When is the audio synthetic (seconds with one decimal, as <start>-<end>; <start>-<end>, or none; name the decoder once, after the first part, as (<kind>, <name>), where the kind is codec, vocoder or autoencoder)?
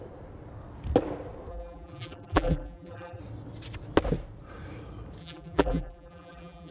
1.5-3.2 (vocoder, BigVGAN v2); 5.2-6.7